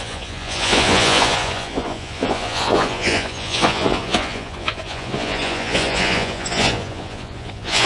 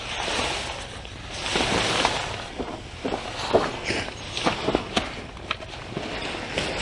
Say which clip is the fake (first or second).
first